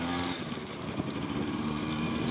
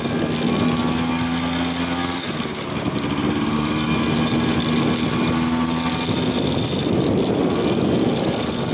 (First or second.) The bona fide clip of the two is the second